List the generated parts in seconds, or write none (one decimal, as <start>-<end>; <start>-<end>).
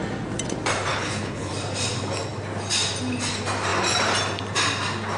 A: 0.9-1.5